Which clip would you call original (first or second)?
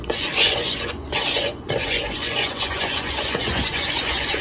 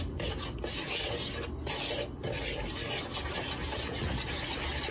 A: second